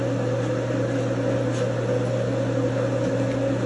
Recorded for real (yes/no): yes